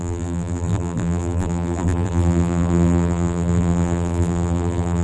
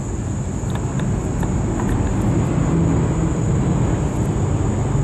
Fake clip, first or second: first